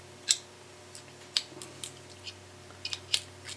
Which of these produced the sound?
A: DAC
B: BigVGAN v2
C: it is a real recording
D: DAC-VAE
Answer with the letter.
C